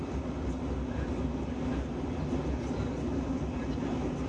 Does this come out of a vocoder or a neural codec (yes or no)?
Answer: no